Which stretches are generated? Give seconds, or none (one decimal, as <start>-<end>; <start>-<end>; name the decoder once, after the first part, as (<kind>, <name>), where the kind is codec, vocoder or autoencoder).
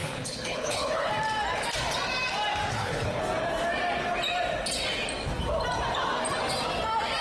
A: 0.0-1.1 (codec, HILCodec); 2.7-3.2